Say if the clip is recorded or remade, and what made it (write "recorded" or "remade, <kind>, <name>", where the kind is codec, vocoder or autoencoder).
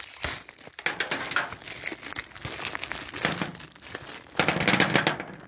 recorded